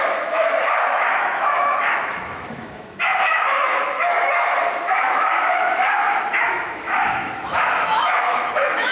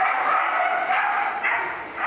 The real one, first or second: second